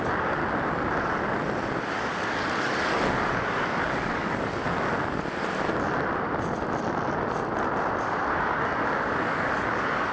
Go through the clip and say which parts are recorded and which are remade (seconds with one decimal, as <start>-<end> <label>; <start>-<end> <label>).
0.0-0.4 remade; 0.4-1.8 recorded; 1.8-4.6 remade; 4.6-8.0 recorded; 8.0-10.1 remade